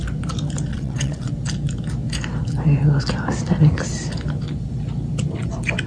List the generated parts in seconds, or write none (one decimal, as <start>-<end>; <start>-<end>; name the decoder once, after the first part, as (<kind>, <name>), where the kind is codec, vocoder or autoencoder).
0.7-1.3 (vocoder, WaveNeXt)